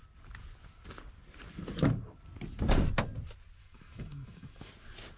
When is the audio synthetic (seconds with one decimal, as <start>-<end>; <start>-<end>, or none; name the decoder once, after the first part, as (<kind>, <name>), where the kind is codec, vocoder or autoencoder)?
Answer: 3.6-4.7 (autoencoder, DAC-VAE)